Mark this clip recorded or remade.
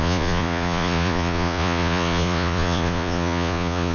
remade